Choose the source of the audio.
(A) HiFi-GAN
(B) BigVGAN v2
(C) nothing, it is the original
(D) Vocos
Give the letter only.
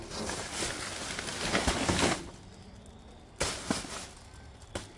C